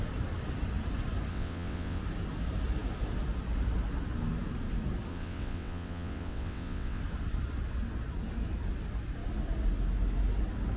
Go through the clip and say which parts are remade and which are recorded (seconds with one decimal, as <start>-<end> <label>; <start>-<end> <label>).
0.0-1.3 recorded; 1.3-2.0 remade; 2.0-5.1 recorded; 5.1-7.0 remade; 7.0-10.8 recorded

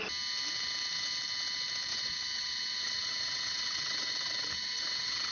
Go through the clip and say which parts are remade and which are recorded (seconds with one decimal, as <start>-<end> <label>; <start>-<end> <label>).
0.0-1.9 recorded; 1.9-5.3 remade

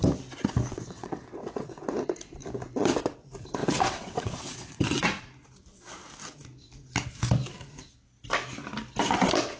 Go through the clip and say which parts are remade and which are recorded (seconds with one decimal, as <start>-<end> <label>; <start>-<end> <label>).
0.0-0.7 recorded; 0.7-1.7 remade; 1.7-3.6 recorded; 3.6-5.2 remade; 5.2-9.6 recorded

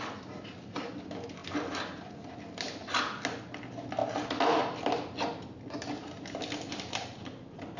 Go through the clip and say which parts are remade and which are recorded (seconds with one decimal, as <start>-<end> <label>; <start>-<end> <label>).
0.0-7.8 recorded

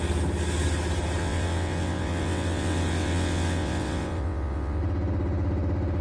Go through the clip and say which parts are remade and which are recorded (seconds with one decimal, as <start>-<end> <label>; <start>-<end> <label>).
0.0-1.2 recorded; 1.2-4.8 remade; 4.8-6.0 recorded

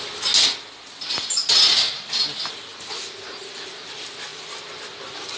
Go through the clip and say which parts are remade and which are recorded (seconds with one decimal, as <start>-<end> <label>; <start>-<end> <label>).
0.0-5.4 recorded

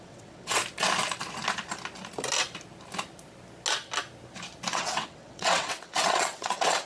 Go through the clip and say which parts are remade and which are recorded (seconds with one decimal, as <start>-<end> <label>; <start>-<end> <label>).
0.0-0.6 remade; 0.6-4.7 recorded; 4.7-6.9 remade